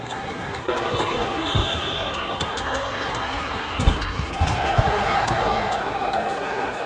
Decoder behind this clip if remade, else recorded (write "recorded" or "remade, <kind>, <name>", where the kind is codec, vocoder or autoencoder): remade, codec, SNAC